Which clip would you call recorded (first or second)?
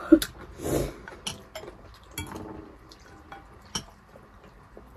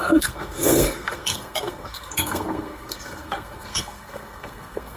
first